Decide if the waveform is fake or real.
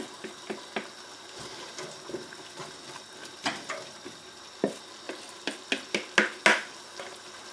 real